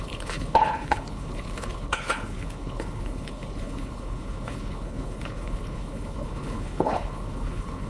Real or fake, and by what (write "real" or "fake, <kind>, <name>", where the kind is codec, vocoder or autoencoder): fake, codec, HILCodec